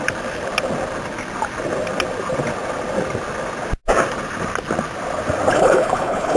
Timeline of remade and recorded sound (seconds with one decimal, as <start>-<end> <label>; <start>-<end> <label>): 0.0-5.5 recorded; 5.5-6.4 remade